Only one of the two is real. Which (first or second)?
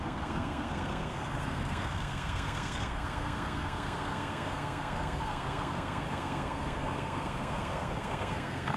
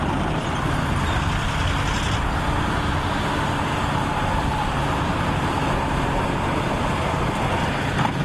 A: second